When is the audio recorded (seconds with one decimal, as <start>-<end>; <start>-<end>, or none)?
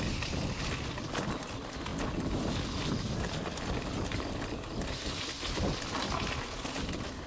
0.0-7.3